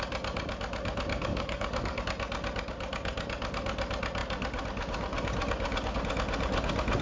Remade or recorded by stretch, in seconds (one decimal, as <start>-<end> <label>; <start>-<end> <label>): 0.0-1.3 recorded; 1.3-2.0 remade; 2.0-7.0 recorded